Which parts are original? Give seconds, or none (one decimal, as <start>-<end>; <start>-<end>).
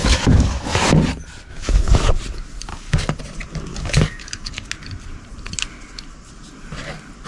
1.0-1.5; 2.1-2.7; 3.2-3.7; 4.7-7.3